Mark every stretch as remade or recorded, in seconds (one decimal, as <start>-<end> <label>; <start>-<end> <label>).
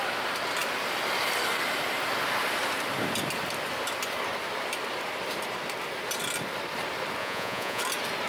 0.0-7.2 recorded; 7.2-7.8 remade; 7.8-8.3 recorded